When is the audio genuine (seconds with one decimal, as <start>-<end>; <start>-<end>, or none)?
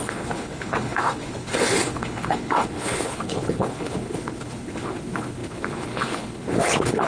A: none